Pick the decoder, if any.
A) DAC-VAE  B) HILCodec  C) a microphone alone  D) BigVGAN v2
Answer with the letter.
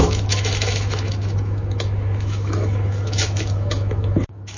A